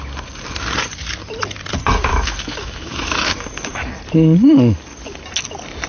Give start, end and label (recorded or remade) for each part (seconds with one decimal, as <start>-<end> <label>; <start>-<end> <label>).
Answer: 0.0-2.1 recorded; 2.1-3.9 remade; 3.9-5.9 recorded